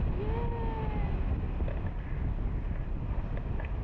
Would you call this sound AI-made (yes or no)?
no